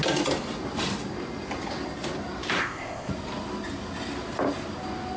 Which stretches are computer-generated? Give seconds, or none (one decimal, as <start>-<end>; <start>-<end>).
2.6-3.1